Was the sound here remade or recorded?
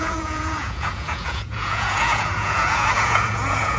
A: remade